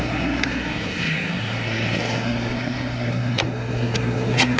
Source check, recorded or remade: remade